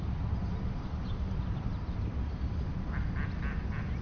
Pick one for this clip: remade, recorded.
recorded